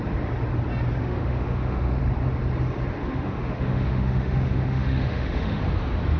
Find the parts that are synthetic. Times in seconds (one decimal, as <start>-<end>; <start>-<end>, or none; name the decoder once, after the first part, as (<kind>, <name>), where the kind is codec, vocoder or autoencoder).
1.0-2.0 (autoencoder, DAC-VAE); 3.0-5.6